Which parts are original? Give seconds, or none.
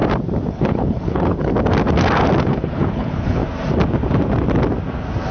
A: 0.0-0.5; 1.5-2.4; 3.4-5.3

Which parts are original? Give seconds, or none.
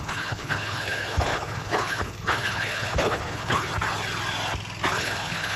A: 3.7-4.9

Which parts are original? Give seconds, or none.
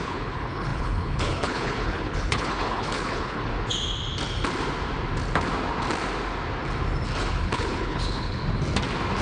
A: 3.5-7.3; 8.4-9.2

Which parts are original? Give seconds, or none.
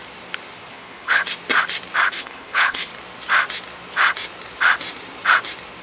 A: 0.0-0.7; 1.2-2.1; 2.9-5.8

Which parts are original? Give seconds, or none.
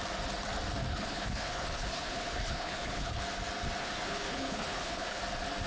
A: 0.0-0.9; 3.2-3.8; 5.2-5.7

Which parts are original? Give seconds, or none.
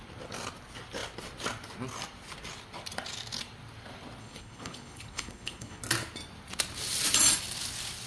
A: 0.0-4.2; 5.8-8.1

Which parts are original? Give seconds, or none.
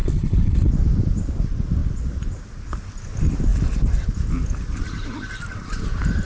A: 0.7-6.2